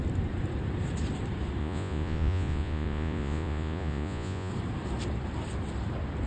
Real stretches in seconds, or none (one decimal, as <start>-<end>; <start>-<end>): 0.0-1.6; 4.5-6.3